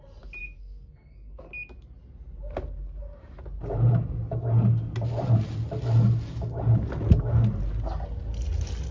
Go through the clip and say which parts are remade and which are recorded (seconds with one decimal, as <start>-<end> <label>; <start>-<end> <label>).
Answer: 0.0-0.4 recorded; 0.4-1.4 remade; 1.4-8.9 recorded